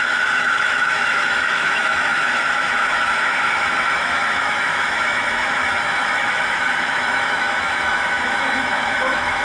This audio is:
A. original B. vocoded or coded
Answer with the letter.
B